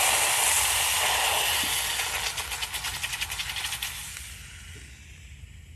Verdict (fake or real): real